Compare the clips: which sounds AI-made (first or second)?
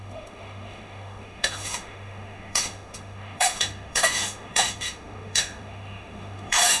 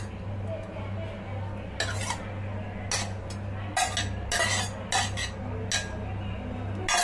first